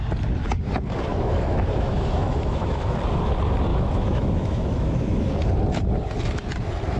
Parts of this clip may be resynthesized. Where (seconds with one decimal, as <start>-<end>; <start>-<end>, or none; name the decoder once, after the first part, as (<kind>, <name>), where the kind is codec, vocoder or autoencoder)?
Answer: 1.1-3.0 (autoencoder, DAC-VAE); 3.7-5.3